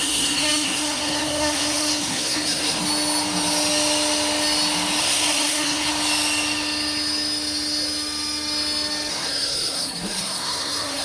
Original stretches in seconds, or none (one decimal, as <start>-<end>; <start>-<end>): 2.8-5.0; 5.9-9.1